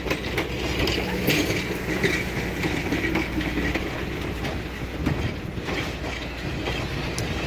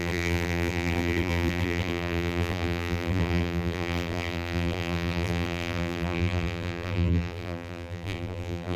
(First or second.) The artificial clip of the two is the second